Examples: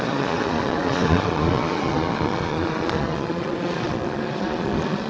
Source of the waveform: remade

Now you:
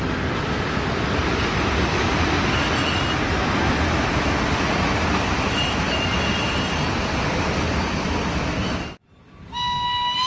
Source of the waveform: recorded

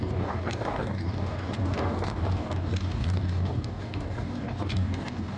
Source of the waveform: remade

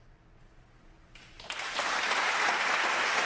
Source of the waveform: recorded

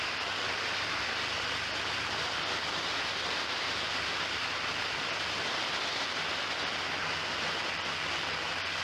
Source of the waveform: recorded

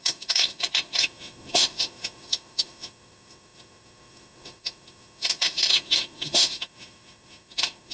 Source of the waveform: remade